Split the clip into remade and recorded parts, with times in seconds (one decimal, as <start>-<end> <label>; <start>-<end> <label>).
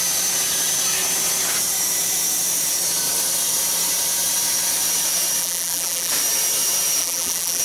0.0-5.4 recorded; 5.4-6.1 remade; 6.1-7.0 recorded; 7.0-7.6 remade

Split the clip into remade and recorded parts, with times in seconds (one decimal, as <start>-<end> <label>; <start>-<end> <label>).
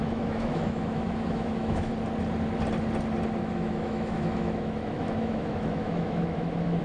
0.0-1.9 remade; 1.9-3.4 recorded; 3.4-6.8 remade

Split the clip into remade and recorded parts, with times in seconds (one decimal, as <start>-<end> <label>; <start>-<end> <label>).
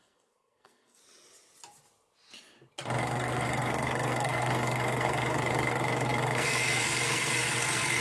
0.0-1.0 remade; 1.0-3.0 recorded; 3.0-8.0 remade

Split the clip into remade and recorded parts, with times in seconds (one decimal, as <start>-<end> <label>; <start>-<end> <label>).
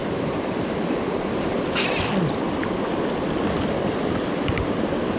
0.0-2.1 remade; 2.1-5.2 recorded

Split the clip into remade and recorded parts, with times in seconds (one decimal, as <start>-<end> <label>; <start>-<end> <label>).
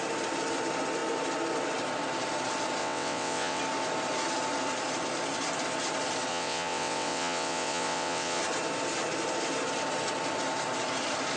0.0-2.8 recorded; 2.8-3.6 remade; 3.6-6.3 recorded; 6.3-8.4 remade; 8.4-11.4 recorded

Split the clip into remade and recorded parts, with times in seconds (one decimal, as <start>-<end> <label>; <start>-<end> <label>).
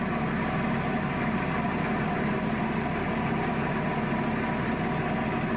0.0-5.6 recorded